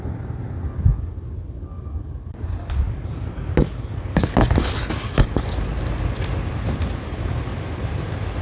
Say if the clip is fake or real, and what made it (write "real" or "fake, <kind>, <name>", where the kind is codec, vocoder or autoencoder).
real